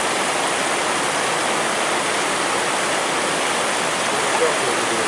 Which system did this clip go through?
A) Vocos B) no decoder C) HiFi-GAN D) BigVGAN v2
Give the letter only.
B